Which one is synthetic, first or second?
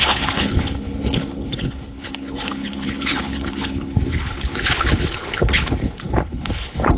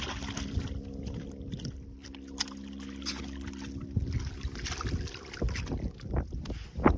first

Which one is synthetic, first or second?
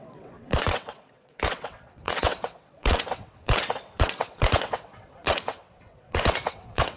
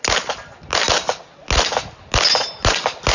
first